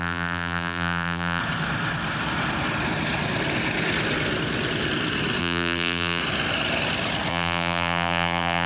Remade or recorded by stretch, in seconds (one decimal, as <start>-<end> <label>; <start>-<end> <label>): 0.0-1.4 remade; 1.4-5.4 recorded; 5.4-6.2 remade; 6.2-7.3 recorded; 7.3-8.7 remade

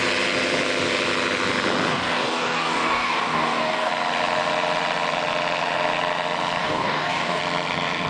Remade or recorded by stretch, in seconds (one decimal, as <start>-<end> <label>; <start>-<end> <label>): 0.0-1.9 recorded; 1.9-3.9 remade; 3.9-6.6 recorded; 6.6-7.4 remade; 7.4-8.1 recorded